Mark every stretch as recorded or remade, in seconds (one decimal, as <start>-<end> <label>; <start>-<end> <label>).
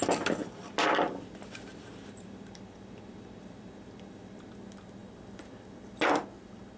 0.0-0.4 recorded; 0.4-4.5 remade; 4.5-6.8 recorded